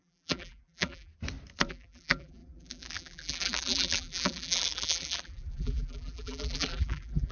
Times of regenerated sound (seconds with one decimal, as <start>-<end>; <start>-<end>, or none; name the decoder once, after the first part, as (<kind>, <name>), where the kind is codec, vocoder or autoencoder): 0.0-1.1 (vocoder, BigVGAN v2); 1.7-7.3